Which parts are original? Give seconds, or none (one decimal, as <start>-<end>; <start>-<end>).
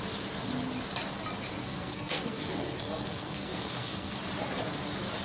0.0-1.6; 4.2-5.2